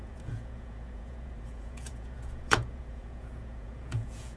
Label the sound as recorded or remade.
remade